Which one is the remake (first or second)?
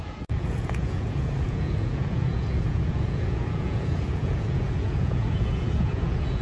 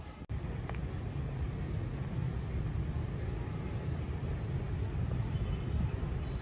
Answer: first